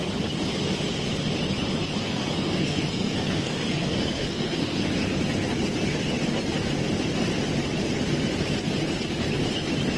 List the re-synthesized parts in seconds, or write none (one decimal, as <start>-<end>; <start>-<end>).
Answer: 2.0-4.9